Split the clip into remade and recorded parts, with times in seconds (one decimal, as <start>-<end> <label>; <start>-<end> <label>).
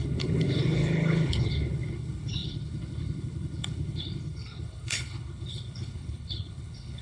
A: 0.0-7.0 remade